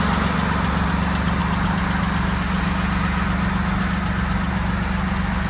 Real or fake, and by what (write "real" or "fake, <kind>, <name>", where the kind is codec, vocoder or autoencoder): real